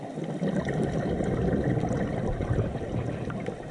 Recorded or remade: recorded